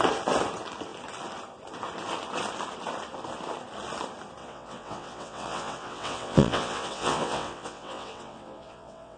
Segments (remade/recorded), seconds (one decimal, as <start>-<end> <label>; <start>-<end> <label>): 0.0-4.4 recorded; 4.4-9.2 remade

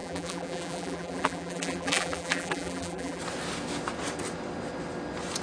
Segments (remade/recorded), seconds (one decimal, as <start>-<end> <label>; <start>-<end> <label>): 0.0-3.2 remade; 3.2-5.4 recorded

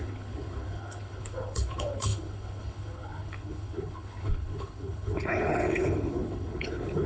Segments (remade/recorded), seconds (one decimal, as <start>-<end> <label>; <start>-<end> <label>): 0.0-7.1 remade

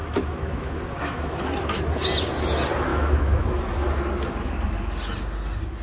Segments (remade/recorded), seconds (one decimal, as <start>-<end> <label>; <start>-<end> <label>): 0.0-1.5 remade; 1.5-2.9 recorded; 2.9-3.6 remade; 3.6-5.8 recorded